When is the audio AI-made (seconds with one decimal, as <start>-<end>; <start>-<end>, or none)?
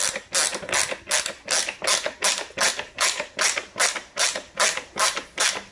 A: none